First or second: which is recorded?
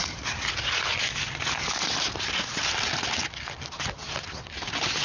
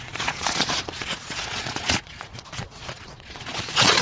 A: first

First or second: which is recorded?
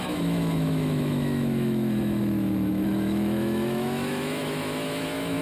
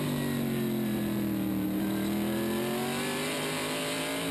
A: second